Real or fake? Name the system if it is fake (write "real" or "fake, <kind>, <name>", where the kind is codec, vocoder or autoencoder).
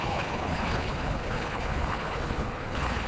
fake, codec, HILCodec